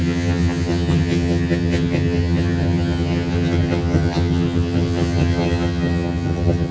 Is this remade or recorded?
remade